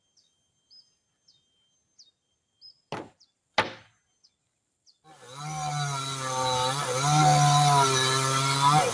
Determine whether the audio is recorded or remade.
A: recorded